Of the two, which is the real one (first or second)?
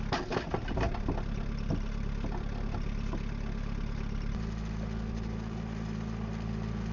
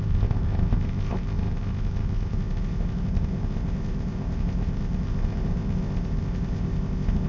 first